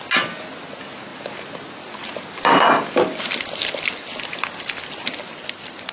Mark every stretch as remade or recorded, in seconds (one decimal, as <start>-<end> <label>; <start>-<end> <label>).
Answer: 0.0-5.9 recorded